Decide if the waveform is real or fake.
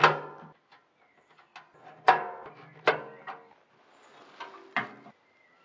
real